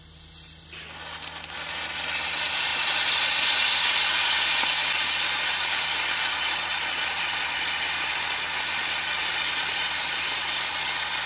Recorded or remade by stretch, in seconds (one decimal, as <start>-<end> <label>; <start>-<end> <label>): 0.0-11.3 recorded